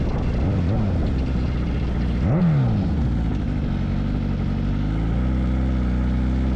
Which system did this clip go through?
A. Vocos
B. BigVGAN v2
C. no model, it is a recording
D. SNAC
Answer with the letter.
C